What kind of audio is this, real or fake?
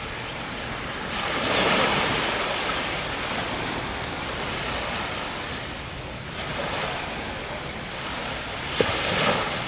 real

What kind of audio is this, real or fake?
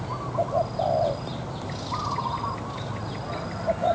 real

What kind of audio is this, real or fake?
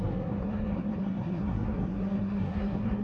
fake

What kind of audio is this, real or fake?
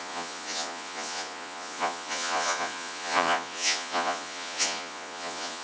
fake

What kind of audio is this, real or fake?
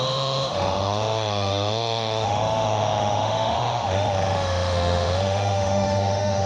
fake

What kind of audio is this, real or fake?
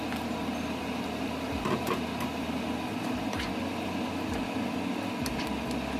real